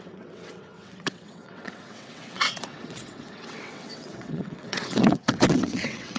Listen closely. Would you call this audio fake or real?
fake